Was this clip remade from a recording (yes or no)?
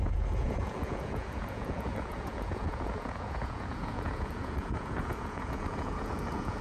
yes